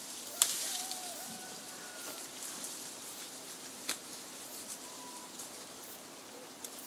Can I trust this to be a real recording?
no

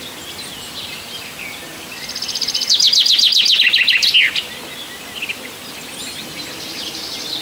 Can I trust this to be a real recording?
yes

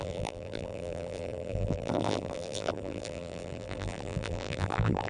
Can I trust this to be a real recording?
no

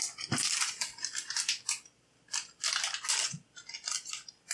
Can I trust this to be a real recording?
yes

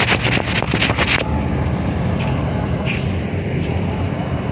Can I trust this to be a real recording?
yes